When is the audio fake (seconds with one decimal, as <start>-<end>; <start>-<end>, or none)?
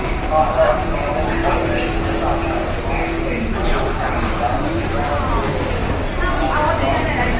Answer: none